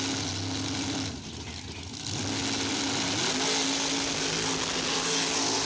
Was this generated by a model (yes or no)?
no